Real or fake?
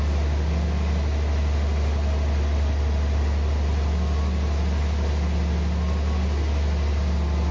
real